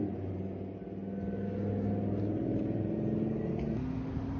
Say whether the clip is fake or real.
real